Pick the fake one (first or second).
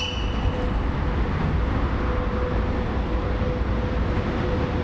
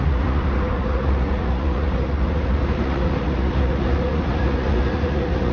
second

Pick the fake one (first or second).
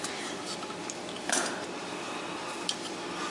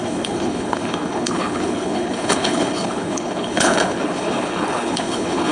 second